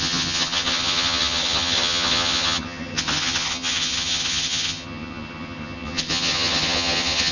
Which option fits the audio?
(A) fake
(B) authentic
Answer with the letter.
A